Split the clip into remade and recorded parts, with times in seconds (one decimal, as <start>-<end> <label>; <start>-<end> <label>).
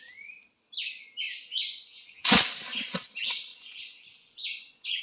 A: 0.0-1.5 recorded; 1.5-2.4 remade; 2.4-3.5 recorded; 3.5-5.0 remade